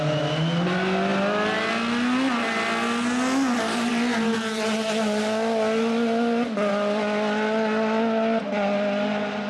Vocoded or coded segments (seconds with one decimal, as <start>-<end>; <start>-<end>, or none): none